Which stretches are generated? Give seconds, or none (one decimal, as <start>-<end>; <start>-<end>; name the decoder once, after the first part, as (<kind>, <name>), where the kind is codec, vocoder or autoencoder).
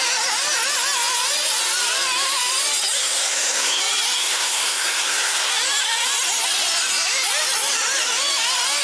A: 3.0-3.8 (codec, SNAC); 4.2-5.5